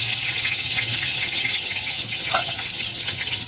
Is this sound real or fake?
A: fake